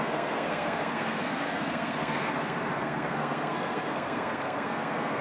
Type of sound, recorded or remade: remade